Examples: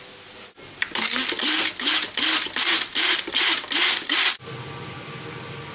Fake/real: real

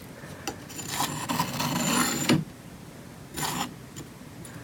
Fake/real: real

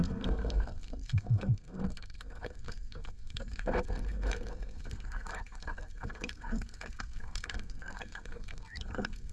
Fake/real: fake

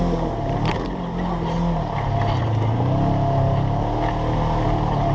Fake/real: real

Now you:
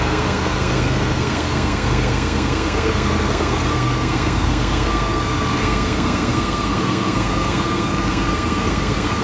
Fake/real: fake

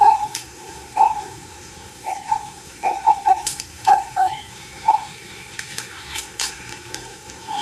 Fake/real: fake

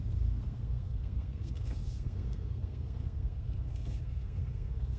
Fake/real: fake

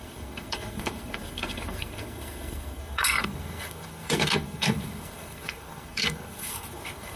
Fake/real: fake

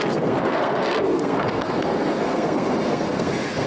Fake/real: fake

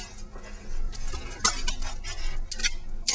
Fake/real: real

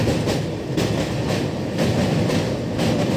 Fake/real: real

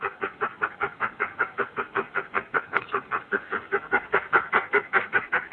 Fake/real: fake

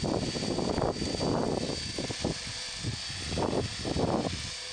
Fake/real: real